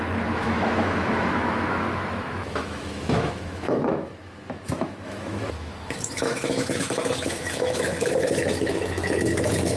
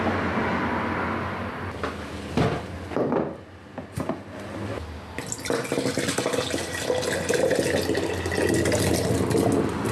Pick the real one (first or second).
second